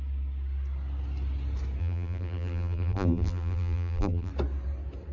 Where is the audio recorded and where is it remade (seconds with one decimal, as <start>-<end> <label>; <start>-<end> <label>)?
0.0-1.8 recorded; 1.8-4.3 remade; 4.3-5.1 recorded